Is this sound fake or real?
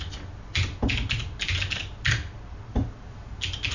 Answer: real